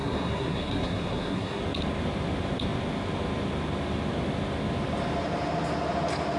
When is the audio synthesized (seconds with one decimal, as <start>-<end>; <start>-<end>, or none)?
0.0-1.6